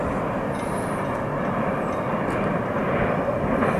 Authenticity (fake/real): real